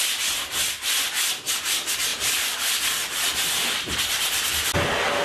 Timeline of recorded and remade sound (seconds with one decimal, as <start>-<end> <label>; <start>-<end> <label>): 0.0-5.2 recorded